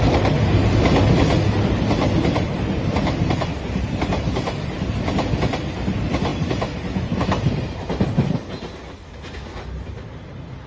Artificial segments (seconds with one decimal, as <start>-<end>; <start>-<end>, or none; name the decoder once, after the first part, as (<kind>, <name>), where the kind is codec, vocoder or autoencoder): none